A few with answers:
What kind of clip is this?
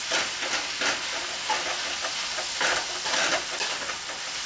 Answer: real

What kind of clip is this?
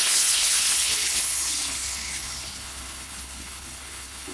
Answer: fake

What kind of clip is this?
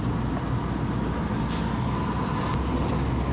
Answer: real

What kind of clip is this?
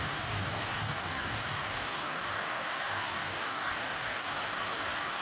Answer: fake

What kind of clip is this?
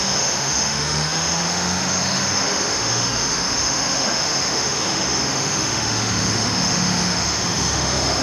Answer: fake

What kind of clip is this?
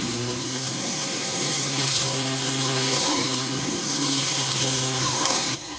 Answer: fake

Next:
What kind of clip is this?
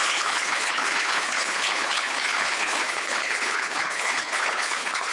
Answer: fake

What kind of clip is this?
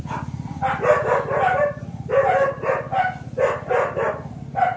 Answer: real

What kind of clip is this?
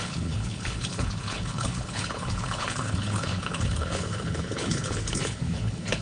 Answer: fake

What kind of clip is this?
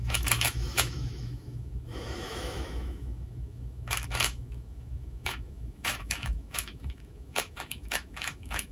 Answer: fake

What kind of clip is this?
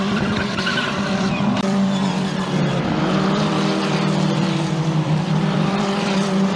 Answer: fake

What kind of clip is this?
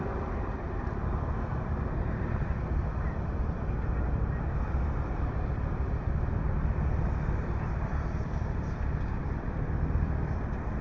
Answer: fake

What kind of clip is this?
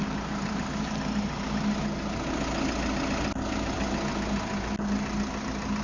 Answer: real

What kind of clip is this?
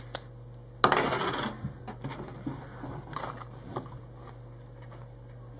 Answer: real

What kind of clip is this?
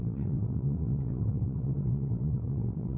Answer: fake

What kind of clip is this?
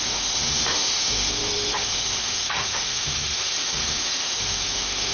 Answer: fake